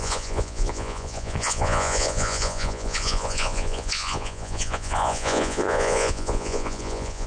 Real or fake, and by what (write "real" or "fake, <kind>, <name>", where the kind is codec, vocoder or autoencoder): fake, vocoder, Vocos